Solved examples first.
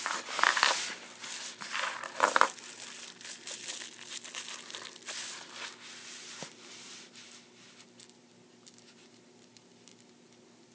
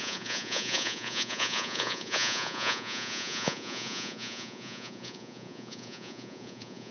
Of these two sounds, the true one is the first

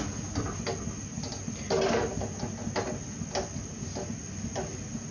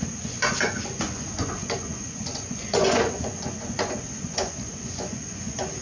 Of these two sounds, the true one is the first